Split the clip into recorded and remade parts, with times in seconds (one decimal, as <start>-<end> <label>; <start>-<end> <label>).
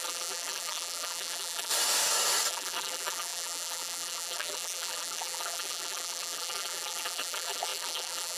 0.0-1.7 remade; 1.7-2.5 recorded; 2.5-8.4 remade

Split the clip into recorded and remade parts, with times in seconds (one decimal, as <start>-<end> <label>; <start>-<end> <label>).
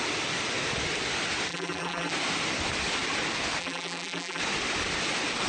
0.0-1.5 recorded; 1.5-2.1 remade; 2.1-3.6 recorded; 3.6-4.4 remade; 4.4-5.5 recorded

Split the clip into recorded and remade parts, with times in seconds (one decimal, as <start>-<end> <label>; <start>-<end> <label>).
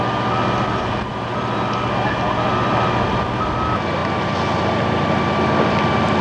0.0-6.2 recorded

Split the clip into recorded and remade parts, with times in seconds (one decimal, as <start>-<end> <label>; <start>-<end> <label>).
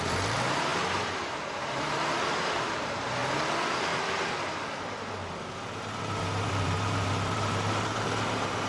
0.0-3.2 remade; 3.2-6.0 recorded; 6.0-8.7 remade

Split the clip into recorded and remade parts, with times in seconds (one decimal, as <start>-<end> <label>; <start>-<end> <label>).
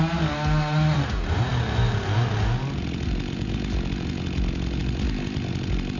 0.0-4.8 recorded; 4.8-6.0 remade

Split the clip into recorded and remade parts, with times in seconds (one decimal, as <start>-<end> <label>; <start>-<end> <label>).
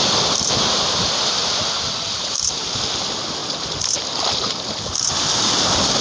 0.0-6.0 recorded